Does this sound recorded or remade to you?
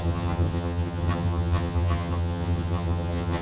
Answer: remade